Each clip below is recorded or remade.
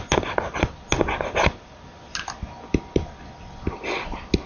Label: recorded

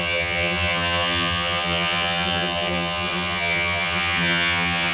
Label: remade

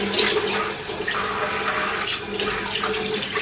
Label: recorded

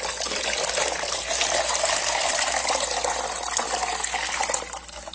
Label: recorded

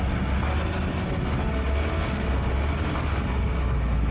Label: recorded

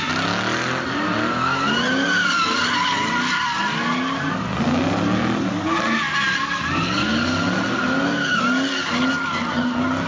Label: recorded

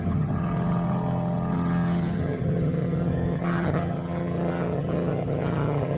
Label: remade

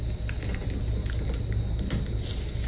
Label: recorded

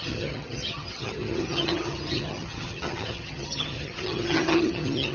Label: remade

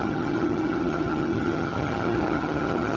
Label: remade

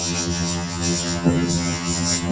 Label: remade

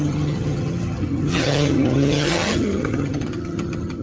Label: remade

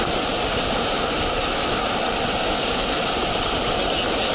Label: recorded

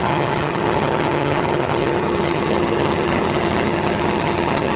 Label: remade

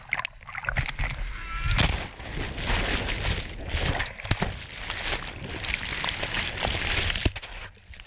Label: recorded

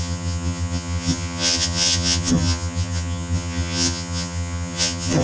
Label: remade